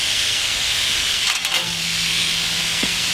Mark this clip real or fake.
fake